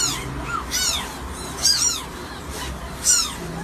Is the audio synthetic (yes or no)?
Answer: no